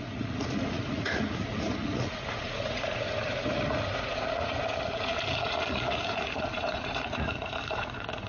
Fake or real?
fake